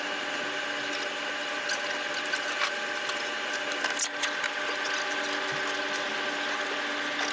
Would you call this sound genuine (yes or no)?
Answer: yes